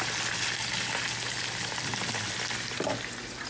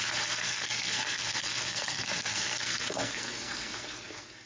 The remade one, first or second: second